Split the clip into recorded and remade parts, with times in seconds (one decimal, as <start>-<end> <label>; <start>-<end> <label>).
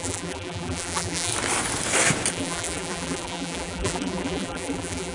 0.0-1.3 remade; 1.3-2.3 recorded; 2.3-5.1 remade